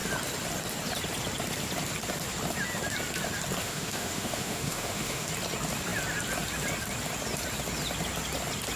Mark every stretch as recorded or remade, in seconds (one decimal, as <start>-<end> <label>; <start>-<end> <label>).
0.0-3.6 recorded; 3.6-5.3 remade; 5.3-8.8 recorded